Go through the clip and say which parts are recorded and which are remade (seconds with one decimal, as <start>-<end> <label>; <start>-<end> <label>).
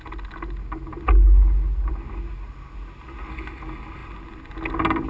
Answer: 0.0-5.1 recorded